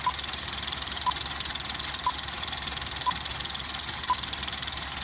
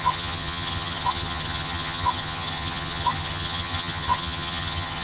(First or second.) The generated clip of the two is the second